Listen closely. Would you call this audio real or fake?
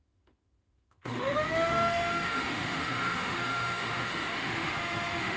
fake